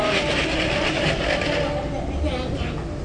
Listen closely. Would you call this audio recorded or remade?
recorded